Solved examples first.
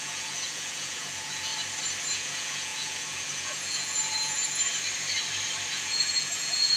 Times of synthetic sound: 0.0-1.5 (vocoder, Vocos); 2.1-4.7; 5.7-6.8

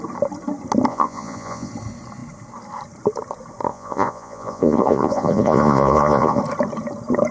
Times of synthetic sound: 0.9-1.7 (vocoder, Vocos); 3.7-6.4